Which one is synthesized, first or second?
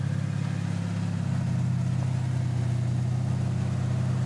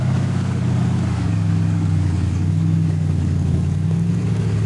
second